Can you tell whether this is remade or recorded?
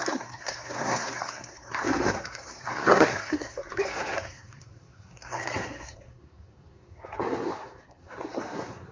remade